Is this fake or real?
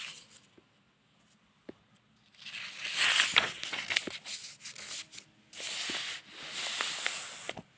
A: real